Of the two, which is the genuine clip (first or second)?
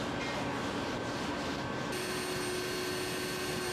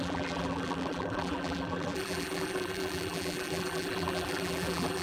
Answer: first